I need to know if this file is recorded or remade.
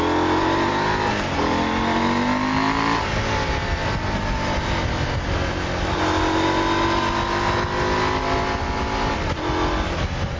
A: recorded